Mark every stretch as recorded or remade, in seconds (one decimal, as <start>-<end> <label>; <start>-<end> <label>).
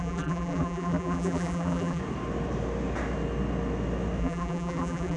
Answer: 0.0-2.0 remade; 2.0-4.2 recorded; 4.2-5.2 remade